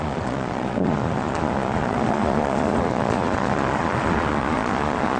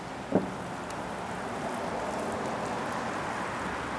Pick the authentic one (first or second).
second